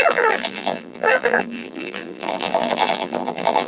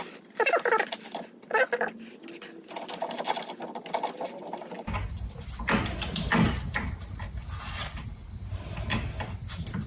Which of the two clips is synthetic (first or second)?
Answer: first